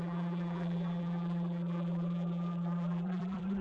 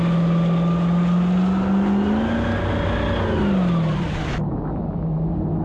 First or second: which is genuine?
second